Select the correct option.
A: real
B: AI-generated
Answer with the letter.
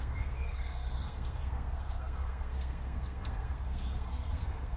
B